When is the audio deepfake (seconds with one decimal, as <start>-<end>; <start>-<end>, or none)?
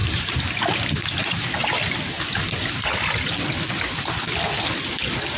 0.0-0.6; 1.2-1.7